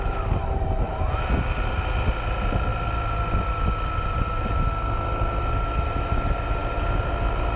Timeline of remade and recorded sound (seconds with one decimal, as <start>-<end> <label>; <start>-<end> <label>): 0.0-7.6 recorded